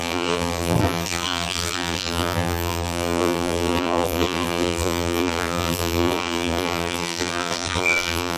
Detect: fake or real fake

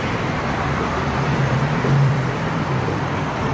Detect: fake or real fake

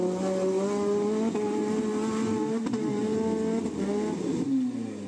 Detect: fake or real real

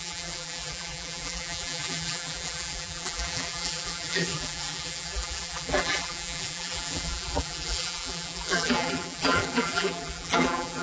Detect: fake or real fake